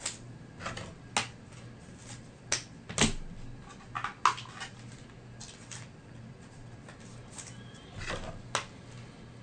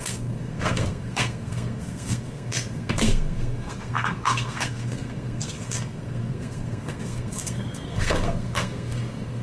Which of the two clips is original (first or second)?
first